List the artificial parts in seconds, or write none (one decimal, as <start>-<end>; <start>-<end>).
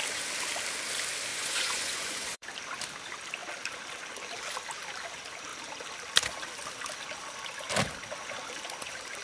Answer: 1.3-2.5